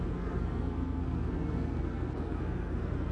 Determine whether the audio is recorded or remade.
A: remade